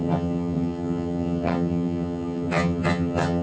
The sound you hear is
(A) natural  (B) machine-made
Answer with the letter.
B